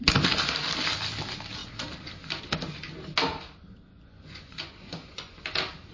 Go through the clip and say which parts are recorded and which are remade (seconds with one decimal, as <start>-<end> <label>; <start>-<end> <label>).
0.0-3.9 recorded; 3.9-5.4 remade; 5.4-5.9 recorded